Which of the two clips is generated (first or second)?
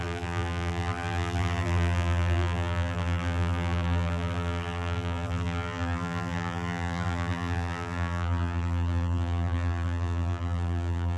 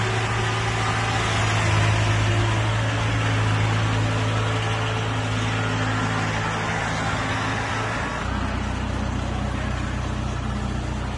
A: first